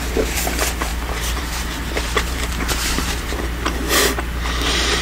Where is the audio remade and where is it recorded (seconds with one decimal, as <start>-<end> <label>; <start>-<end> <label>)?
0.0-0.9 recorded; 0.9-3.4 remade; 3.4-5.0 recorded